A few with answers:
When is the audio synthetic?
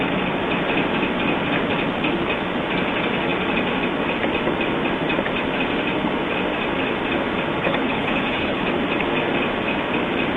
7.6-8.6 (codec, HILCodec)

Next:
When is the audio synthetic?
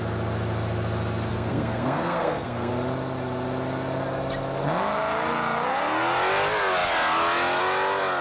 1.3-2.7 (codec, SNAC)